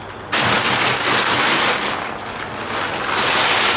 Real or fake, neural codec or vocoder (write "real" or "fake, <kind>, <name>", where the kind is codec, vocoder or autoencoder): real